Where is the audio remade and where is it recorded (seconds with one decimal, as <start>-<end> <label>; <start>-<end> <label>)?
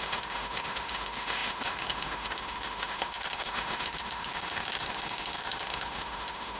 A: 0.0-6.6 remade